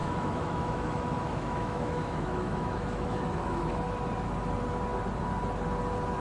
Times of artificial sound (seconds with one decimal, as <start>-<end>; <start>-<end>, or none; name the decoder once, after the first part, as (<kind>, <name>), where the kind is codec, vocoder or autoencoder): 0.0-3.7 (autoencoder, DAC-VAE)